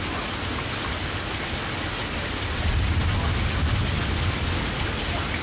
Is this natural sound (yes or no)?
yes